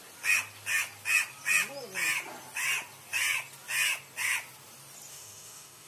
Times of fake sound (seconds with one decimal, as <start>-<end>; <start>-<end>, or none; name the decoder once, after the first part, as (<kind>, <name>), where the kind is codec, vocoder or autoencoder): 5.1-5.9 (autoencoder, DAC-VAE)